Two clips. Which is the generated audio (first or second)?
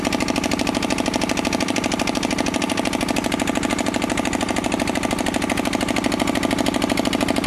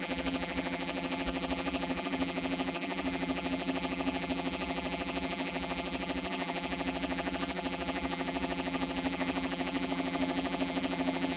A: second